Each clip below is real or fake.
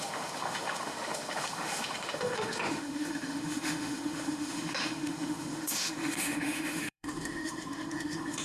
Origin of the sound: fake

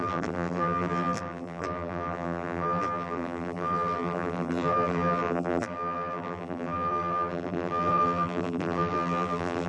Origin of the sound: fake